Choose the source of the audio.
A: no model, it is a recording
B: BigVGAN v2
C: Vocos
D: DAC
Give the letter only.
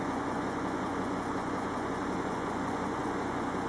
C